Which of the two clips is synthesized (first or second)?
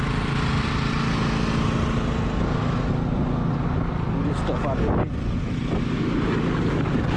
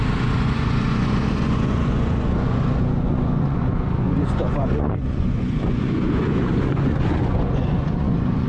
second